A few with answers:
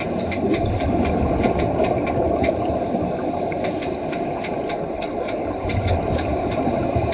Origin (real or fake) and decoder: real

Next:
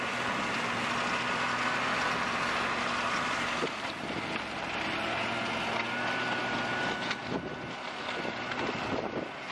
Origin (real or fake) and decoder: real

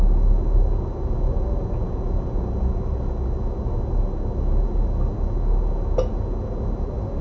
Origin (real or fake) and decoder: real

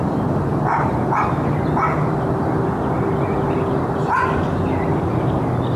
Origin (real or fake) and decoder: real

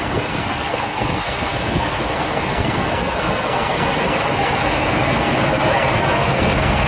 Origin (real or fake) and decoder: fake, codec, SNAC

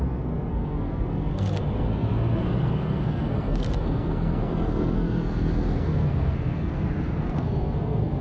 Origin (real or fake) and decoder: fake, codec, SNAC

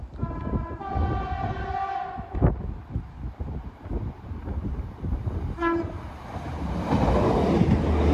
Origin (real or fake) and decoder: real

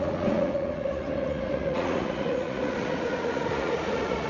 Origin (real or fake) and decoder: fake, vocoder, Vocos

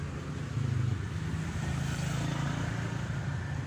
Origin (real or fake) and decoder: real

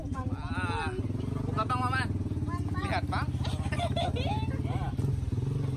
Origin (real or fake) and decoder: real